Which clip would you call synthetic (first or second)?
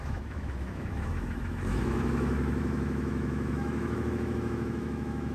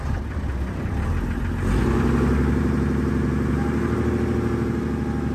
first